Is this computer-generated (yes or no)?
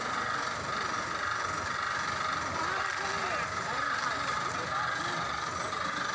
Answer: no